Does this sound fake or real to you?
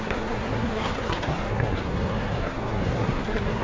fake